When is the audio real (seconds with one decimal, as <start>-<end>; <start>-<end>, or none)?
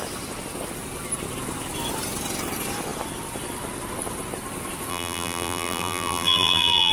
0.0-4.9